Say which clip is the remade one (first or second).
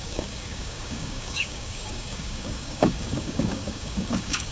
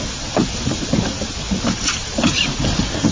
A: first